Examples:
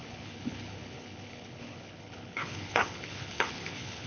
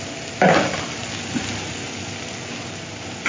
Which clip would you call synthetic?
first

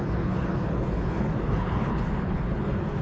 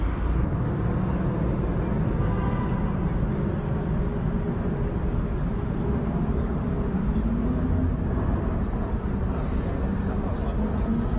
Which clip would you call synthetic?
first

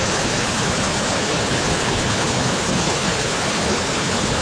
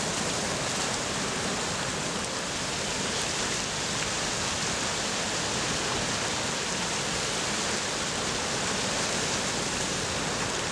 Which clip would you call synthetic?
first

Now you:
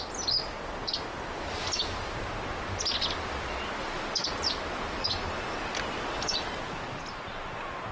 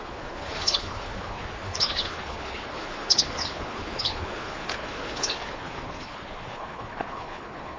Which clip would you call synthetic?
second